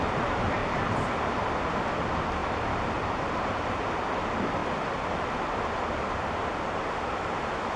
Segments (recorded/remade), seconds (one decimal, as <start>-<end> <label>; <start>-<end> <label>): 0.0-2.4 recorded; 2.4-4.1 remade; 4.1-7.8 recorded